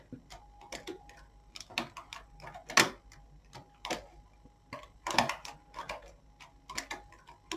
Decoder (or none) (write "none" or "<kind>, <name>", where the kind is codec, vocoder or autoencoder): none